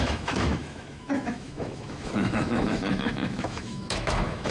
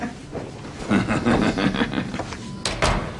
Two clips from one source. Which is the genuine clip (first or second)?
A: second